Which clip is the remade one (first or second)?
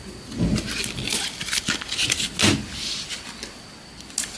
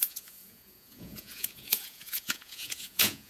second